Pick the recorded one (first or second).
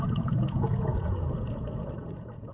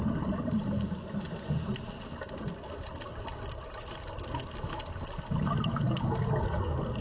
second